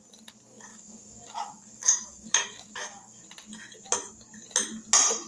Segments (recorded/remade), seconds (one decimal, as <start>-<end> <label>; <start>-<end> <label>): 0.0-0.7 recorded; 0.7-3.2 remade; 3.2-5.3 recorded